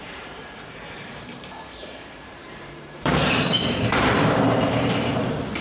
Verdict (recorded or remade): remade